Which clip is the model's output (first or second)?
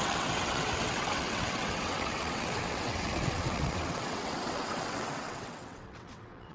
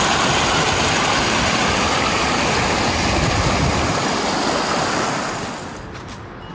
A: first